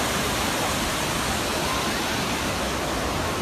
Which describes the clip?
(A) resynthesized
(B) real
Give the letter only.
B